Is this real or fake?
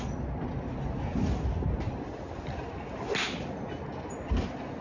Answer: real